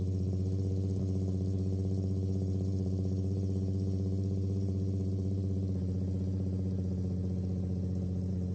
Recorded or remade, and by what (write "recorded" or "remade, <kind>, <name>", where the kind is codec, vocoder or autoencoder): remade, vocoder, BigVGAN v2